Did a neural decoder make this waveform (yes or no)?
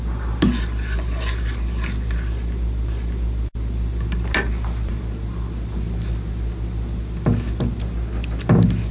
no